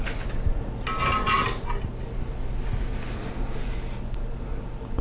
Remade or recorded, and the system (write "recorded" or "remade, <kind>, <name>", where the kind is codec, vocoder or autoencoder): recorded